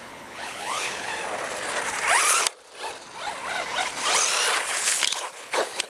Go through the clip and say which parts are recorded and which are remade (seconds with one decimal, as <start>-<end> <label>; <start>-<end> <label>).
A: 0.0-1.1 remade; 1.1-4.6 recorded; 4.6-5.9 remade